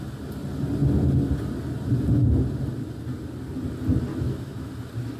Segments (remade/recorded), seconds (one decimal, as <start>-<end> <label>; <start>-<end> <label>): 0.0-4.1 recorded; 4.1-4.7 remade; 4.7-5.2 recorded

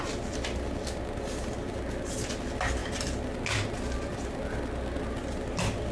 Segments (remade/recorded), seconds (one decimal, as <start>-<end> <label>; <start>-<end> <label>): 0.0-5.9 recorded

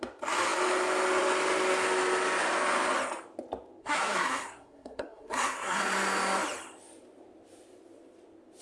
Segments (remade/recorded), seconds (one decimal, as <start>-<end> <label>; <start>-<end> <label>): 0.0-3.8 recorded; 3.8-5.8 remade; 5.8-8.6 recorded

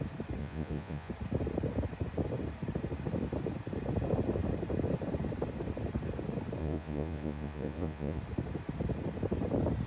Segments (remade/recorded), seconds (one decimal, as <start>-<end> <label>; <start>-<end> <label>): 0.0-0.4 recorded; 0.4-1.1 remade; 1.1-6.6 recorded; 6.6-8.2 remade; 8.2-9.9 recorded

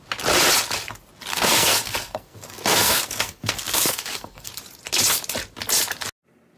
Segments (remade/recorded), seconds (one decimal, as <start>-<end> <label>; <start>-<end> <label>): 0.0-1.3 recorded; 1.3-4.5 remade; 4.5-6.6 recorded

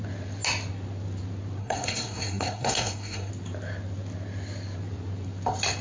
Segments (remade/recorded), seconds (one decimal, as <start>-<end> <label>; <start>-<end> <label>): 0.0-1.6 recorded; 1.6-3.3 remade; 3.3-5.8 recorded